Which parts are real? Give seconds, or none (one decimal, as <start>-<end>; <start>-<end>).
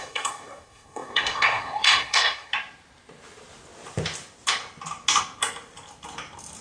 2.5-6.6